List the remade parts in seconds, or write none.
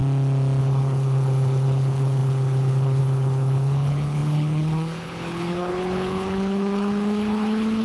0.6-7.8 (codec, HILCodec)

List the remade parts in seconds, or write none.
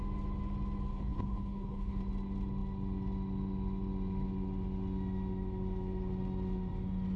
0.9-2.0 (codec, HILCodec)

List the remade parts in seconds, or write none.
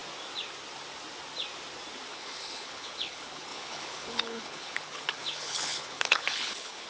2.1-6.9 (codec, HILCodec)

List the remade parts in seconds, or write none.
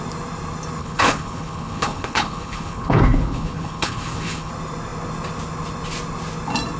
0.8-4.5 (codec, HILCodec)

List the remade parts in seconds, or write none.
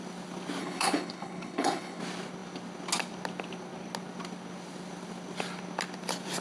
0.6-2.0 (codec, HILCodec)